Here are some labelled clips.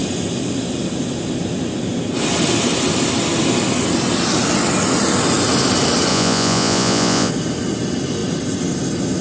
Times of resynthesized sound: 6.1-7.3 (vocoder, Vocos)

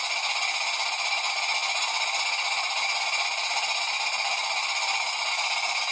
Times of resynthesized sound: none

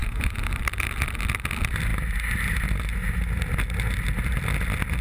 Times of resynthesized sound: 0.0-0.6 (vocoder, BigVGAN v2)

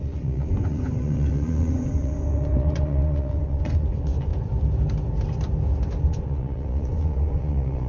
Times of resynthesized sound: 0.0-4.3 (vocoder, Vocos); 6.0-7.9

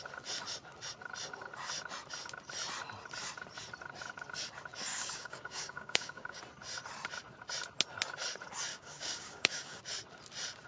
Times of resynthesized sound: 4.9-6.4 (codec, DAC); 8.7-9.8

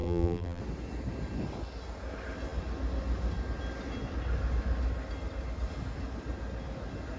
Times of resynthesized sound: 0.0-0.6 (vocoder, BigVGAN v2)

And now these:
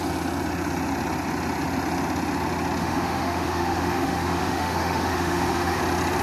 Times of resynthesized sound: 2.8-5.8 (autoencoder, DAC-VAE)